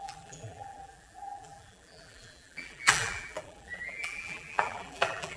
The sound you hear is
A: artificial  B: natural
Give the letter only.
A